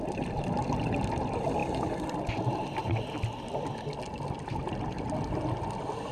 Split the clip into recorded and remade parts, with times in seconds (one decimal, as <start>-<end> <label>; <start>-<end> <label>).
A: 0.0-6.1 recorded